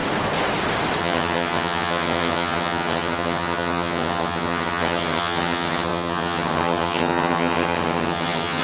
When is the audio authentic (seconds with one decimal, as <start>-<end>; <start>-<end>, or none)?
0.0-1.0